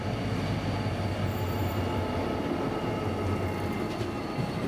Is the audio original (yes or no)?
yes